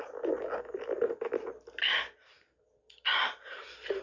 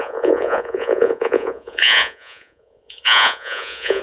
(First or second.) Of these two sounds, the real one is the first